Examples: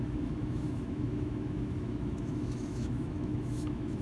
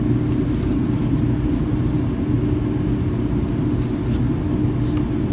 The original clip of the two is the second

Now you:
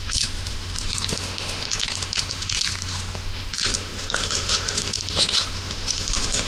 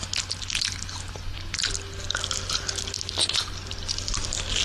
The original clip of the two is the second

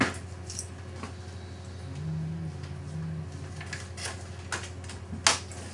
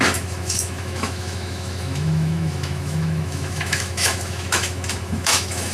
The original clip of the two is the first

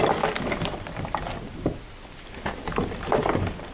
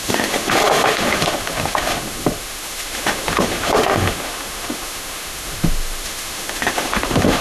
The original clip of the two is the first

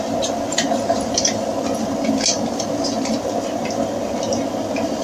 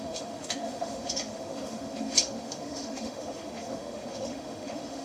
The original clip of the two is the first